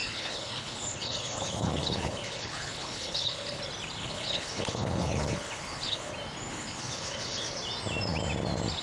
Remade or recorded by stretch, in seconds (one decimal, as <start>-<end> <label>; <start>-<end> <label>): 0.0-3.6 remade; 3.6-4.0 recorded; 4.0-6.1 remade; 6.1-6.5 recorded; 6.5-7.5 remade; 7.5-8.8 recorded

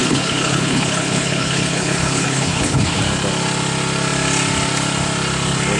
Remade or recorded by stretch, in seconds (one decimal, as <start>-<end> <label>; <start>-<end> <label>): 0.0-3.0 remade; 3.0-5.8 recorded

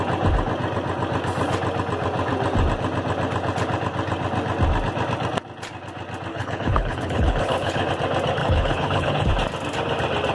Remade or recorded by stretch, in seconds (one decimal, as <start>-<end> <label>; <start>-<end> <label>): 0.0-6.3 recorded; 6.3-7.9 remade; 7.9-8.4 recorded; 8.4-9.3 remade; 9.3-10.3 recorded